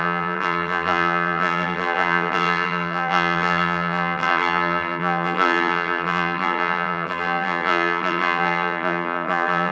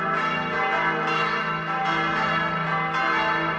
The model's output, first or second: first